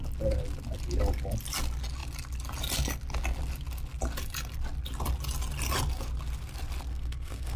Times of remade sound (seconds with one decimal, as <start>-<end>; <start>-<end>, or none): 6.9-7.6